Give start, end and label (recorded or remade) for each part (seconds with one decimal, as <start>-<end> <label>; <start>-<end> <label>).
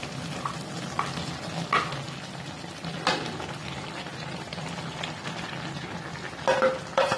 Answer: 0.0-4.1 recorded; 4.1-5.3 remade; 5.3-7.2 recorded